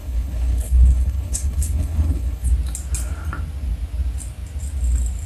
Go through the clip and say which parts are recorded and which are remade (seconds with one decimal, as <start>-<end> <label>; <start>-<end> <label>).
0.0-2.5 remade; 2.5-5.3 recorded